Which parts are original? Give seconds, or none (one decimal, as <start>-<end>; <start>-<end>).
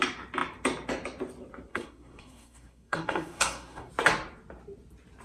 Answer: 0.0-1.7; 3.9-5.2